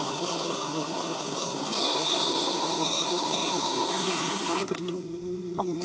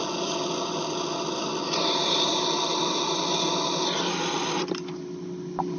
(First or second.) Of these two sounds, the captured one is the second